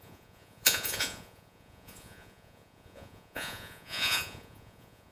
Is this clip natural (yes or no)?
no